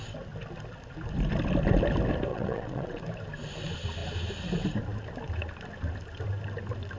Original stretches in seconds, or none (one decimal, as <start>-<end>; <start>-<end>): 0.0-2.3; 3.0-7.0

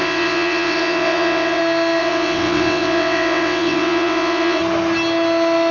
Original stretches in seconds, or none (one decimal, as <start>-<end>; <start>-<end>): 1.6-2.0; 4.6-5.7

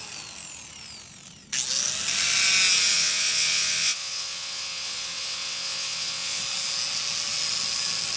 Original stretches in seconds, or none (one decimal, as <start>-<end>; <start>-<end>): 0.0-2.9; 6.4-8.2

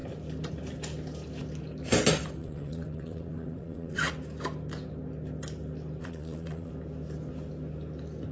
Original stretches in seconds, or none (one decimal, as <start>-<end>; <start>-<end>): 0.0-2.4; 4.1-6.0; 6.7-8.3